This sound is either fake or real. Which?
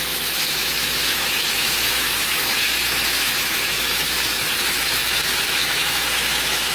fake